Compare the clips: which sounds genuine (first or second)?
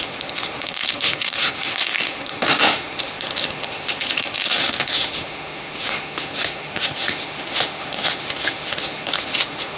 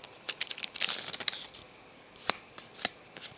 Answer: second